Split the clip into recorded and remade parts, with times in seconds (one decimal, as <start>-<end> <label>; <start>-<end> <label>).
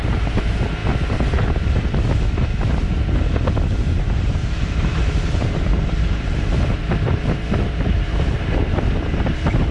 0.0-4.4 recorded; 4.4-9.7 remade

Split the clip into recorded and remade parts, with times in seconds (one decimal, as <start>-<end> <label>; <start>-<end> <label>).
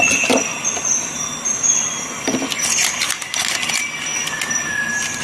0.0-2.8 recorded; 2.8-3.5 remade; 3.5-5.2 recorded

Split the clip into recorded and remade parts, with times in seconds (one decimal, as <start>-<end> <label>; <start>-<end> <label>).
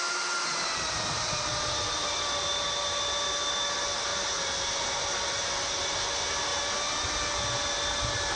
0.0-0.5 recorded; 0.5-1.5 remade; 1.5-8.4 recorded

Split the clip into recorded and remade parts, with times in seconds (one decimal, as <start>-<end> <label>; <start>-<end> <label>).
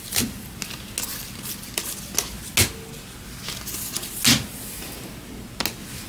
0.0-6.1 recorded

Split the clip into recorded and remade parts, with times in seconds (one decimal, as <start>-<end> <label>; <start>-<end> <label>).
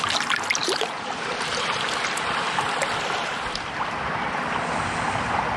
0.0-0.6 recorded; 0.6-1.6 remade; 1.6-5.6 recorded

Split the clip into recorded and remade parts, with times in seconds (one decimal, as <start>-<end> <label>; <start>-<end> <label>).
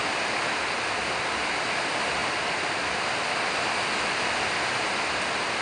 0.0-5.6 recorded